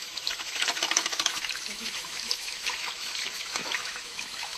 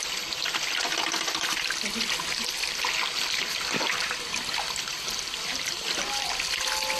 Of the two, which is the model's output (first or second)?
first